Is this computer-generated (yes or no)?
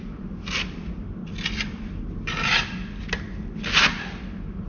no